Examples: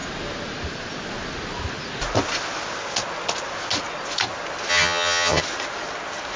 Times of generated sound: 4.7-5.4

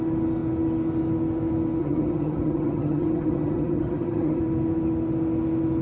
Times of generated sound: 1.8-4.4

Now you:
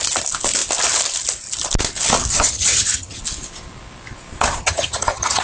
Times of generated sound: 2.3-3.2; 4.6-5.4

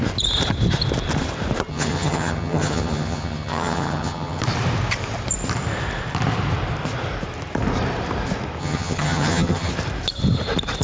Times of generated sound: 1.7-4.4; 8.6-9.7

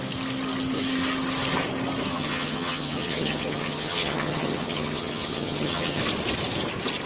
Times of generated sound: 2.1-6.0